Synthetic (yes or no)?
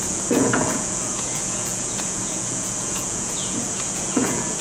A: yes